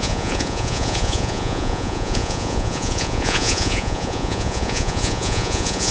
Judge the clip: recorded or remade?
remade